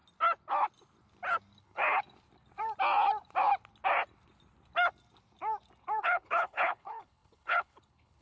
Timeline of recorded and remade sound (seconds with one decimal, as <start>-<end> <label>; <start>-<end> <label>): 0.0-1.6 recorded; 1.6-2.0 remade; 2.0-6.0 recorded; 6.0-8.2 remade